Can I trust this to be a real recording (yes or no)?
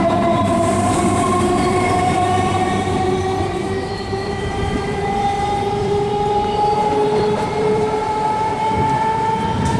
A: no